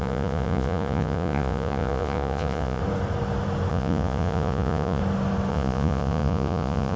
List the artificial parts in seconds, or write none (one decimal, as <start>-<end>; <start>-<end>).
0.0-2.8; 3.7-5.0; 5.5-7.0

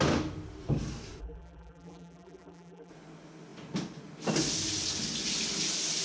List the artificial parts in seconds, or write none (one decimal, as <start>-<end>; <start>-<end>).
1.2-2.9

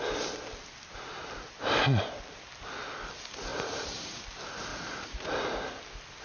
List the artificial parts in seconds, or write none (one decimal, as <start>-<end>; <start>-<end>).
3.5-4.2; 4.7-5.8

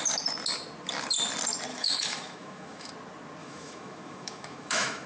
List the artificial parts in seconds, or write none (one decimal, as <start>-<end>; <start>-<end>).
1.7-2.9; 3.4-5.1

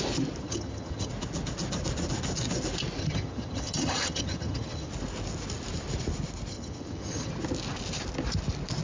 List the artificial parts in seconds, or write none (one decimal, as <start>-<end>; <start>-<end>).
0.4-1.1; 3.0-4.9; 6.5-7.3

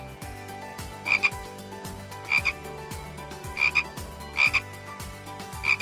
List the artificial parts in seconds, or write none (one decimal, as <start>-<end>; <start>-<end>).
0.7-4.2

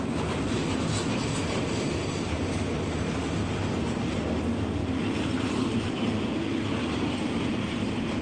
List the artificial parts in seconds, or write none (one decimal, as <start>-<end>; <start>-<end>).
none

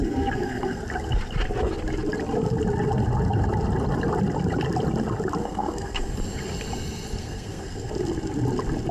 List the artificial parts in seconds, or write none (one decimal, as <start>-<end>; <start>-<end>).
0.0-0.8; 5.4-6.1; 7.2-7.9